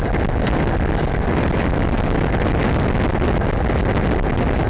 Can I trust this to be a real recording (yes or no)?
yes